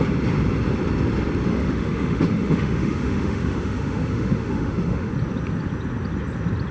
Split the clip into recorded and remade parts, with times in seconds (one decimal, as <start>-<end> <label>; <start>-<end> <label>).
0.0-1.5 recorded; 1.5-5.1 remade; 5.1-6.7 recorded